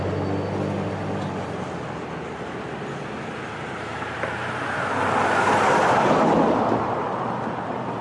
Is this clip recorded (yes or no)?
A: yes